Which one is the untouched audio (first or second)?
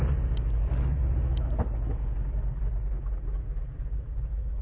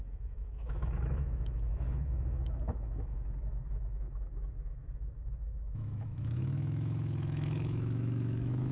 first